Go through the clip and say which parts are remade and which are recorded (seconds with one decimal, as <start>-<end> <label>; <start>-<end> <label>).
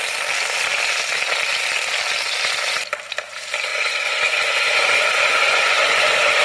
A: 0.0-3.7 recorded; 3.7-6.4 remade